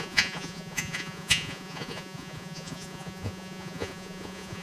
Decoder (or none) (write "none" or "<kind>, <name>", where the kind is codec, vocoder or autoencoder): vocoder, Vocos